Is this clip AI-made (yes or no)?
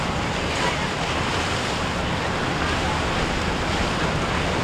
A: no